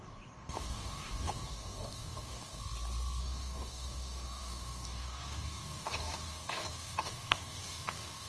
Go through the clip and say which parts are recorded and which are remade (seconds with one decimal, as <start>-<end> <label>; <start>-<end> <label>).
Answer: 0.0-2.6 remade; 2.6-3.2 recorded; 3.2-8.3 remade